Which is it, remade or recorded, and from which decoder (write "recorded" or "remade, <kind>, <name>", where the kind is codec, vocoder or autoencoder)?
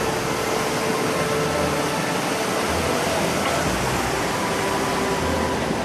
recorded